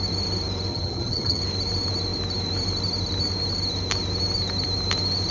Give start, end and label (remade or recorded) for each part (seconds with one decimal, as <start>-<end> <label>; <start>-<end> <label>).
0.0-0.7 recorded; 0.7-1.4 remade; 1.4-5.3 recorded